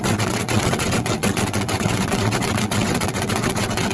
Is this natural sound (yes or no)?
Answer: no